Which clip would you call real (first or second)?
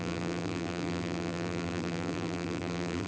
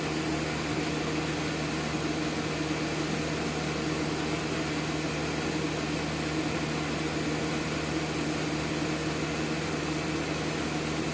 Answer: second